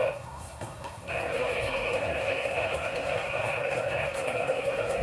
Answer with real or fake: fake